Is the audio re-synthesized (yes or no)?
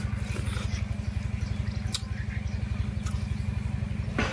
no